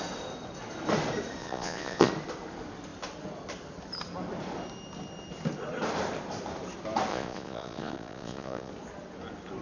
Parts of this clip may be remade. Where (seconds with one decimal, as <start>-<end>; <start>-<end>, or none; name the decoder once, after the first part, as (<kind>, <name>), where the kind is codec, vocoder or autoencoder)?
1.4-2.1 (vocoder, Vocos); 7.1-8.7